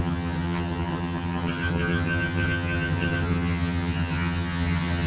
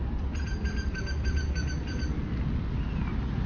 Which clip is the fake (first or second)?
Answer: first